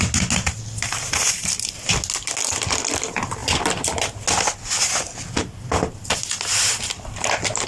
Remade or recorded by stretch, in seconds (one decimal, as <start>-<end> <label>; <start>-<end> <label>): 0.0-7.7 recorded